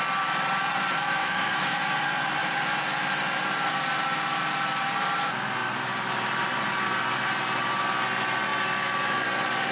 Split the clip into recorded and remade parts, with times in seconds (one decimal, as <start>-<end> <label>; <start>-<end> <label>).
0.0-1.2 recorded; 1.2-1.8 remade; 1.8-9.7 recorded